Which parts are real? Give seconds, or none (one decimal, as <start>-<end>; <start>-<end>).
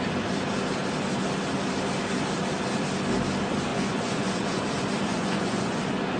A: 0.0-3.7; 4.6-5.1; 5.8-6.2